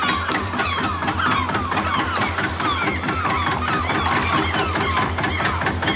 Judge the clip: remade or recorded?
recorded